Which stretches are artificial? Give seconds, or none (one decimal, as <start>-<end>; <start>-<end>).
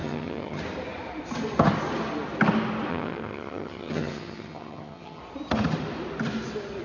0.0-0.6; 2.9-5.2